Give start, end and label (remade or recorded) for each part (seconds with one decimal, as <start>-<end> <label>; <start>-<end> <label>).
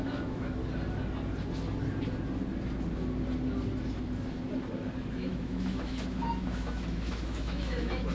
0.0-0.6 remade; 0.6-5.1 recorded; 5.1-8.1 remade